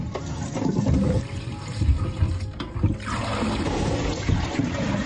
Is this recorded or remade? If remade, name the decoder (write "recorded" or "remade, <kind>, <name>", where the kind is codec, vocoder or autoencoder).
recorded